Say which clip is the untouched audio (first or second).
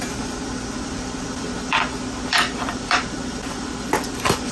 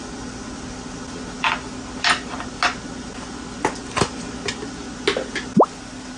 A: second